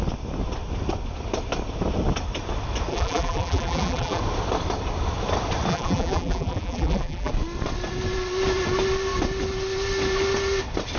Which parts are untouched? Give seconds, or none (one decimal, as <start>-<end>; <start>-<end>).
0.0-2.9; 4.2-5.7; 7.3-11.0